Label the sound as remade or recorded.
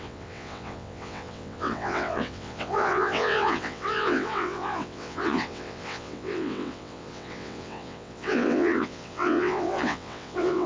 remade